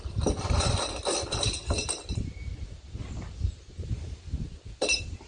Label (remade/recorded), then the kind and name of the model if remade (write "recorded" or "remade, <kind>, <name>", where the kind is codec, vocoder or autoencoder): remade, vocoder, BigVGAN v2